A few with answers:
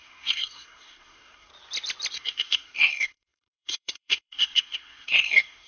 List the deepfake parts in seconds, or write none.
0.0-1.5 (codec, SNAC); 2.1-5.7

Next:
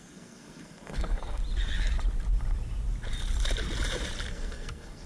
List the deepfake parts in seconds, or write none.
0.0-1.4 (codec, SNAC); 4.3-5.1

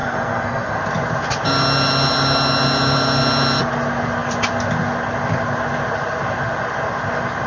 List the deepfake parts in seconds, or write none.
0.0-0.8 (codec, SNAC)

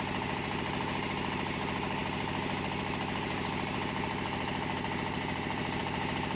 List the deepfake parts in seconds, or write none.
none

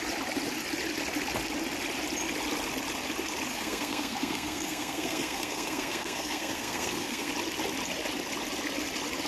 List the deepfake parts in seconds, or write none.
3.5-7.3 (codec, SNAC)

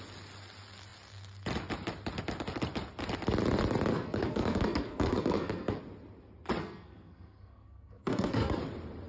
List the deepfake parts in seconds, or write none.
3.9-5.8 (codec, SNAC); 6.6-8.6

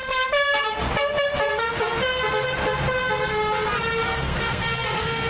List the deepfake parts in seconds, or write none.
4.0-5.3 (codec, SNAC)

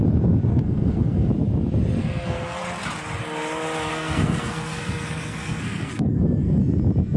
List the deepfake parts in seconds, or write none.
0.5-1.3 (codec, SNAC); 2.0-2.6; 3.9-6.6